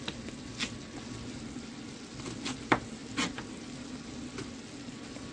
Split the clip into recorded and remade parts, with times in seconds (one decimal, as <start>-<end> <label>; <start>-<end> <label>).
0.0-5.3 recorded